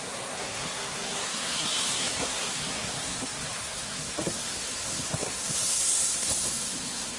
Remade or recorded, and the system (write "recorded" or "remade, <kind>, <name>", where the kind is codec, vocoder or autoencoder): remade, codec, SNAC